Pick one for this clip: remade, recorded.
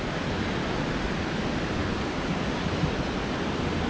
recorded